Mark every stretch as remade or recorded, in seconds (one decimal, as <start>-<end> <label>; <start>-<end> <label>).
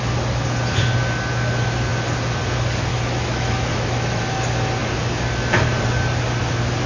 0.0-2.9 recorded; 2.9-4.2 remade; 4.2-6.9 recorded